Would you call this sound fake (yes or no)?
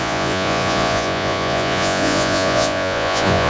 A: yes